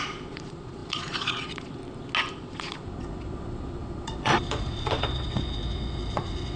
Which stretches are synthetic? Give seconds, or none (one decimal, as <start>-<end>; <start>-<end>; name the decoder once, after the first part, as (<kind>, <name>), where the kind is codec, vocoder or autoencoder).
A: 0.0-1.8 (vocoder, Vocos); 2.3-6.6